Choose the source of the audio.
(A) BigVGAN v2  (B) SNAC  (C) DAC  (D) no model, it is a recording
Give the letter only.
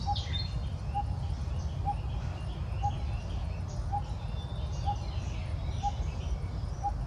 D